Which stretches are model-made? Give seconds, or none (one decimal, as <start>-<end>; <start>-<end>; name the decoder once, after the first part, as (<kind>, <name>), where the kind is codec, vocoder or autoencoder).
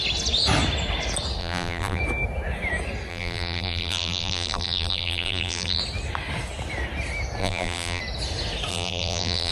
1.4-2.0 (vocoder, BigVGAN v2); 3.1-5.8; 7.4-8.0; 8.7-9.5